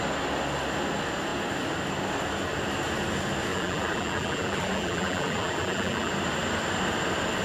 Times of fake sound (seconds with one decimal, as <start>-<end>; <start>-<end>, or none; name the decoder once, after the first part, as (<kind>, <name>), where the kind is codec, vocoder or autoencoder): 3.5-6.1 (vocoder, BigVGAN v2)